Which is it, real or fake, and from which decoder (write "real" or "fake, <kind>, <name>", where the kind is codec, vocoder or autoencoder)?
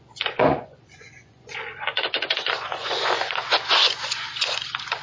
fake, vocoder, Vocos